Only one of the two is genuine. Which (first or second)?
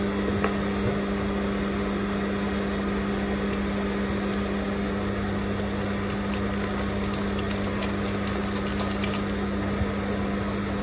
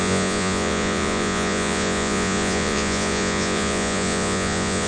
first